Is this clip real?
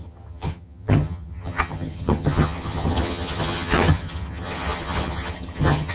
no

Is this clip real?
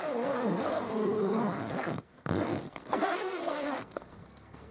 no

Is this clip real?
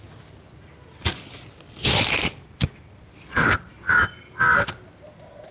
yes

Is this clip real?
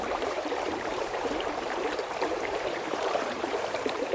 no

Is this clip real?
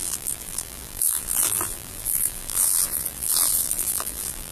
no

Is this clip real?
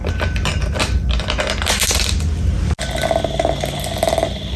yes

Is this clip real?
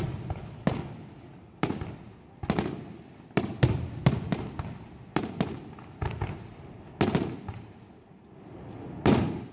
yes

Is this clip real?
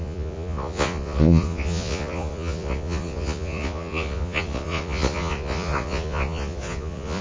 no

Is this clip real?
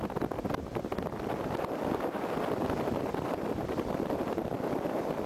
yes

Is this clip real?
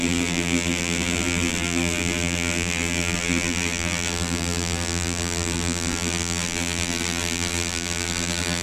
no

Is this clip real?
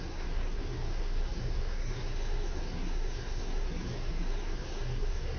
no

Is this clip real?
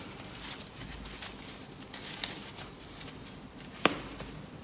yes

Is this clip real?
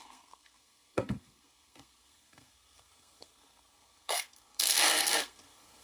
no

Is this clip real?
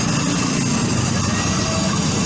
yes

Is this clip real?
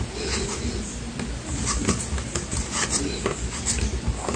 yes